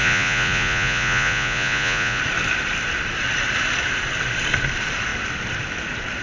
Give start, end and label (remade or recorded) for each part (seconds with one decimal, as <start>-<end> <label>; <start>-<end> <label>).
0.0-2.2 remade; 2.2-6.2 recorded